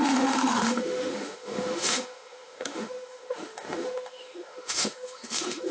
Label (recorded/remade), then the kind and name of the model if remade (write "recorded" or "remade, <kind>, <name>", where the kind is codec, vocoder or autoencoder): remade, autoencoder, DAC-VAE